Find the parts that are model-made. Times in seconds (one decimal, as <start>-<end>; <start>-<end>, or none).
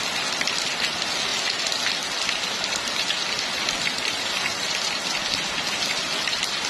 none